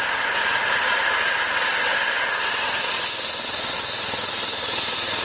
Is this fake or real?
real